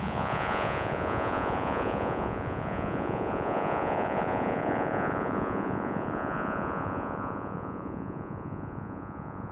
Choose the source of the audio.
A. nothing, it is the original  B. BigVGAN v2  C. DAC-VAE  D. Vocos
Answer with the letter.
D